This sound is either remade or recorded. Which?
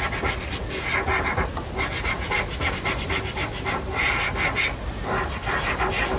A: recorded